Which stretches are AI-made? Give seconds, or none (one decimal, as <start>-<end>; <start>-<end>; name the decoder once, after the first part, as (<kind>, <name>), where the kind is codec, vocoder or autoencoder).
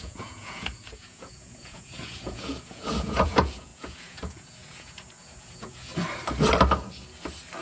0.0-5.9 (vocoder, Vocos)